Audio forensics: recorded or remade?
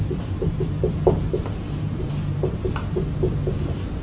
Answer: remade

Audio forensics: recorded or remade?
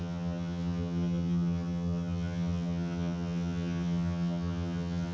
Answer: remade